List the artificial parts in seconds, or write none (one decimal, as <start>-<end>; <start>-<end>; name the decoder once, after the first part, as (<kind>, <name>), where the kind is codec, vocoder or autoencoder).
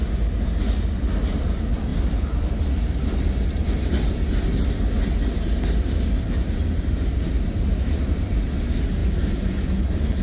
none